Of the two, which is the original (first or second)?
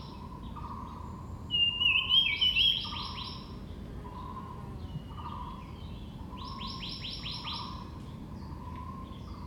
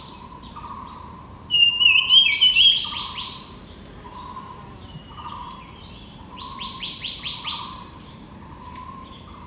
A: first